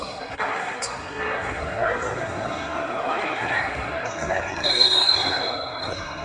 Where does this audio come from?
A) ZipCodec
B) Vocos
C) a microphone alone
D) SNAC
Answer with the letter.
D